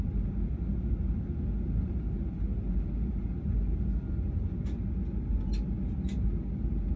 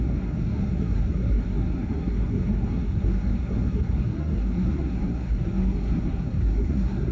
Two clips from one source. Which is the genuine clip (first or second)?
first